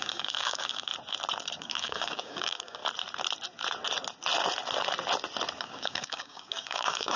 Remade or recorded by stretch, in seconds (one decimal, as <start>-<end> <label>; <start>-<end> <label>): 0.0-0.9 remade; 0.9-1.6 recorded; 1.6-2.8 remade; 2.8-5.6 recorded; 5.6-7.2 remade